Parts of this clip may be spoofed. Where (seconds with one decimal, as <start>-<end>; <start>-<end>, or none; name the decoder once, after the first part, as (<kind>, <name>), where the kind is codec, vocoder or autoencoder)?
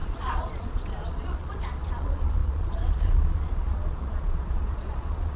0.0-5.4 (vocoder, Vocos)